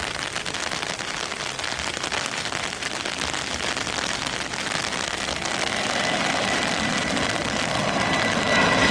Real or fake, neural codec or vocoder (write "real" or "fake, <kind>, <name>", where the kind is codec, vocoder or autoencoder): real